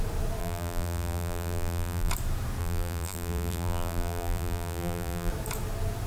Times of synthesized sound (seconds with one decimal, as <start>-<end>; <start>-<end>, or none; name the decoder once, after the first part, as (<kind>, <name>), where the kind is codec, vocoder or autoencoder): 0.4-2.1 (vocoder, BigVGAN v2); 2.6-5.3